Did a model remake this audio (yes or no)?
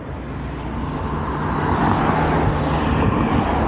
no